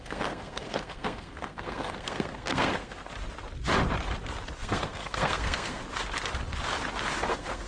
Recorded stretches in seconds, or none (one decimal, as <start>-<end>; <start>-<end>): 3.0-4.6; 5.8-7.3